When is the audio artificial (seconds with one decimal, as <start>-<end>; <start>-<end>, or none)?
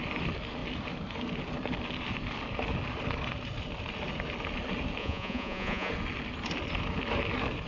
5.0-5.9